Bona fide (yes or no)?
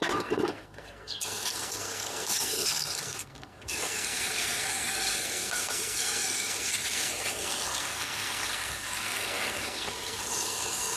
no